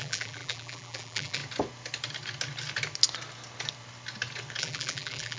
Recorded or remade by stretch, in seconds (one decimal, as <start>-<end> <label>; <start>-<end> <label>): 0.0-1.4 remade; 1.4-4.6 recorded; 4.6-5.4 remade